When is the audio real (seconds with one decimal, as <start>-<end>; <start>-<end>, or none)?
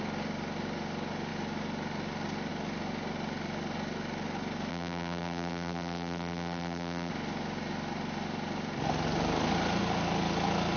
0.0-4.7; 7.1-10.8